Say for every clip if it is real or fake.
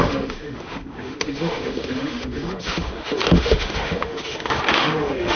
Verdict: fake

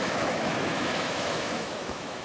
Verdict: fake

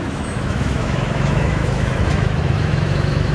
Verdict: fake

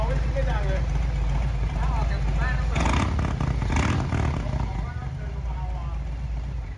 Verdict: real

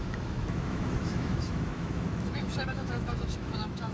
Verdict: fake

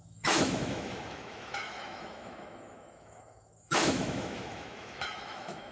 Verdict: fake